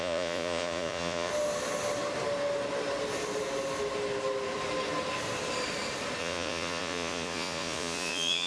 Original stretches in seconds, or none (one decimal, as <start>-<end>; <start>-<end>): 1.3-6.2